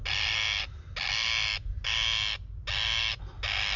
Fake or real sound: real